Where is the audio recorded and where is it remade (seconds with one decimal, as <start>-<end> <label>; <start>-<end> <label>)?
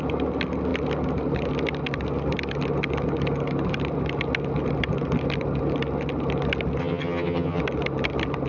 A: 0.0-6.8 recorded; 6.8-7.6 remade; 7.6-8.5 recorded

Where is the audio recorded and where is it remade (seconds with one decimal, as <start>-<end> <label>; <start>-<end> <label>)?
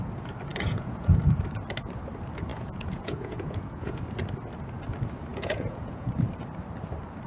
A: 0.0-0.5 recorded; 0.5-1.3 remade; 1.3-2.5 recorded; 2.5-4.0 remade; 4.0-5.3 recorded; 5.3-6.1 remade; 6.1-7.3 recorded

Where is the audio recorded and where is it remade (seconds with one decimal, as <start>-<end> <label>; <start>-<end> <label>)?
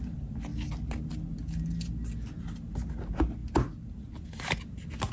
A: 0.0-5.1 recorded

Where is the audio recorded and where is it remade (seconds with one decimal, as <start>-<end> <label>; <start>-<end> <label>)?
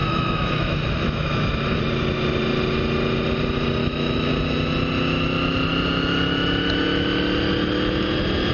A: 0.0-1.8 remade; 1.8-3.8 recorded; 3.8-4.3 remade; 4.3-8.5 recorded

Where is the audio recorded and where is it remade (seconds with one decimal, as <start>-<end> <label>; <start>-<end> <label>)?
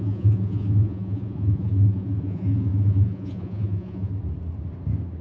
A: 0.0-4.1 remade; 4.1-5.2 recorded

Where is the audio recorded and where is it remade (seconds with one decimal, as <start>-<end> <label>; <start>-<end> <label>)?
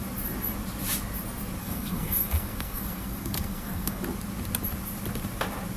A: 0.0-1.6 recorded; 1.6-4.0 remade; 4.0-5.8 recorded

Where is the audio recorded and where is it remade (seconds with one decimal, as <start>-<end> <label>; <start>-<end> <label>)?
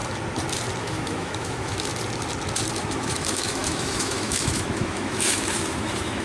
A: 0.0-0.8 recorded; 0.8-1.9 remade; 1.9-2.8 recorded; 2.8-6.2 remade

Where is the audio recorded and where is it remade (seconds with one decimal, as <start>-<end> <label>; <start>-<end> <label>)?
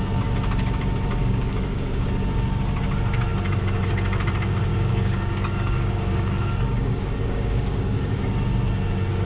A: 0.0-1.2 recorded; 1.2-2.1 remade; 2.1-4.7 recorded; 4.7-8.2 remade; 8.2-9.2 recorded